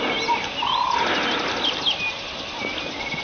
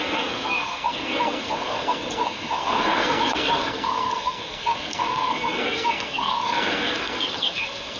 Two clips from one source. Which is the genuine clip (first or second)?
first